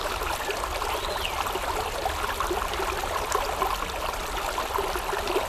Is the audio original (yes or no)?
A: yes